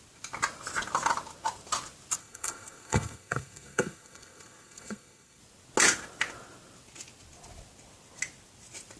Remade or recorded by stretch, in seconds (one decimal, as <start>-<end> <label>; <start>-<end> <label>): 0.0-2.2 recorded; 2.2-5.4 remade; 5.4-9.0 recorded